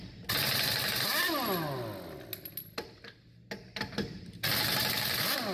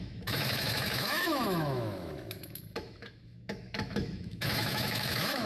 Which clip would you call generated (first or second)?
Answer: second